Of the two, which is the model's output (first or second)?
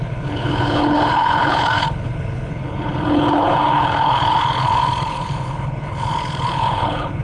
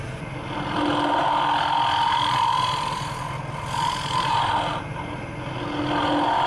first